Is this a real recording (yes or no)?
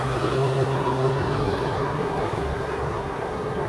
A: no